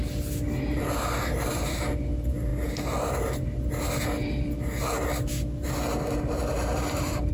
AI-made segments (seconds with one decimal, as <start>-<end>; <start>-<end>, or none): none